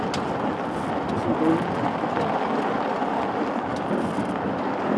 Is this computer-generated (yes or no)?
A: no